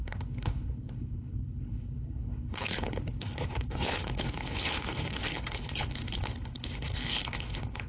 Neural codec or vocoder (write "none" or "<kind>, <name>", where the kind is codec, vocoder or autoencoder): codec, HILCodec